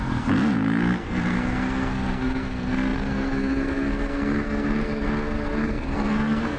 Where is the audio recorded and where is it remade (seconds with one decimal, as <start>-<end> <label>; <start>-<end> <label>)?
0.0-6.6 remade